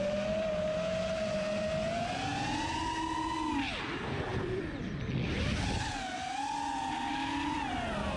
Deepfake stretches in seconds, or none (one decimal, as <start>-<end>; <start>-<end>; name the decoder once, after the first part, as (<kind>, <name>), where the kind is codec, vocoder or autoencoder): none